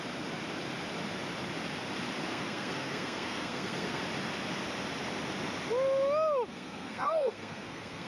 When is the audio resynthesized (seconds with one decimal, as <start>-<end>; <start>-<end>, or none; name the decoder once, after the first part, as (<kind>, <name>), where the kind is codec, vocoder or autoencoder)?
2.3-4.0 (codec, SNAC); 6.5-8.1

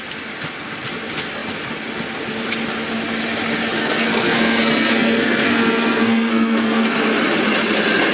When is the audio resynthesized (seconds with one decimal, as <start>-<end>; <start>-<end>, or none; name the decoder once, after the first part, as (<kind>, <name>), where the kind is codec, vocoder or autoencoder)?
3.8-6.9 (codec, SNAC)